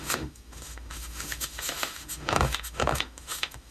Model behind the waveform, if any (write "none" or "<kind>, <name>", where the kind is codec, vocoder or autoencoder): autoencoder, DAC-VAE